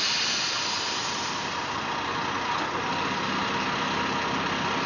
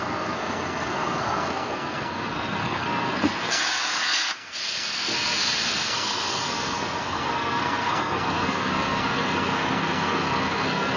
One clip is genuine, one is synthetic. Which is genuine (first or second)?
first